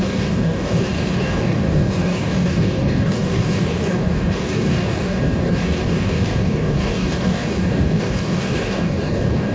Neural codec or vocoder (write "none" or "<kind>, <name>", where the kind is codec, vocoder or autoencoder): codec, DAC